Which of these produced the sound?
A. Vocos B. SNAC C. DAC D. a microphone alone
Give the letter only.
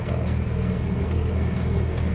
B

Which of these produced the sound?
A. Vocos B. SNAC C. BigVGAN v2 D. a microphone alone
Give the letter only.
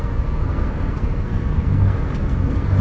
B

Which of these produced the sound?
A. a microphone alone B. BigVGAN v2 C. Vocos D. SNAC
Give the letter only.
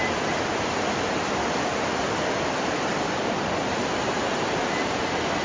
A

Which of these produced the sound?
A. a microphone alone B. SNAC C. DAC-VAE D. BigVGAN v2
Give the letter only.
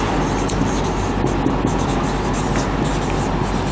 A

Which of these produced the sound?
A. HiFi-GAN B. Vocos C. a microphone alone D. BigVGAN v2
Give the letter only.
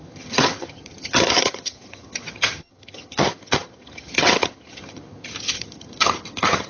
A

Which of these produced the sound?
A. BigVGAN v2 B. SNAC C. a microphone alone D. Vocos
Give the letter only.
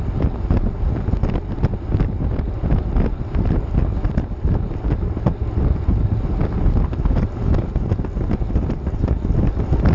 C